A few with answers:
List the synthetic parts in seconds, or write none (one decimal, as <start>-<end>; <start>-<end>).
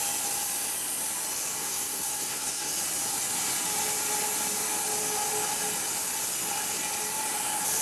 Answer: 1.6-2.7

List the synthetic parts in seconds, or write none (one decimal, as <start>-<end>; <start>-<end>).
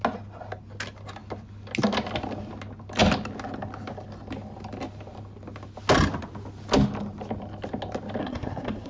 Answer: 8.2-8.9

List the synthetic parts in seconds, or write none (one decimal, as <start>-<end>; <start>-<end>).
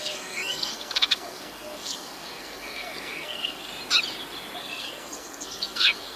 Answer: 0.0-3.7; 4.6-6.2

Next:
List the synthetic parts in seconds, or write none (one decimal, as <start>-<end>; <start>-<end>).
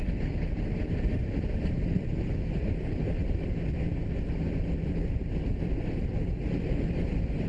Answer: none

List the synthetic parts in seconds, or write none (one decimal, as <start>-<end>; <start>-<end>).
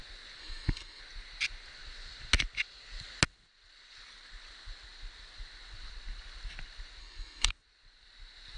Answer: 0.4-1.0; 7.0-7.5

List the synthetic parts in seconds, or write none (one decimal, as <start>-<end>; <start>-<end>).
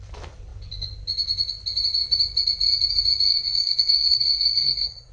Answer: 3.3-5.1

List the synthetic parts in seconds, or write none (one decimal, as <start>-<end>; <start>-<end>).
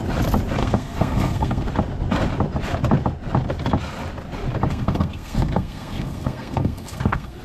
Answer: 0.6-1.7; 4.7-7.4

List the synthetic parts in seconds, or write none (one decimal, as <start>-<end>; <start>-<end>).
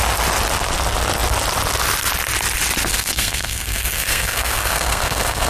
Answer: 2.9-5.5